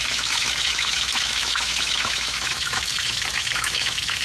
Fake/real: fake